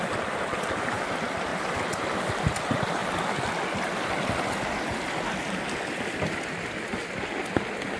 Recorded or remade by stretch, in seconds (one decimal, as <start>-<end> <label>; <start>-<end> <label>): 0.0-8.0 recorded